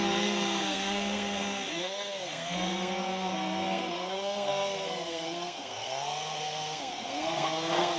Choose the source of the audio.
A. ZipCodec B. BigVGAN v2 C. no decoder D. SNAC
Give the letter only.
D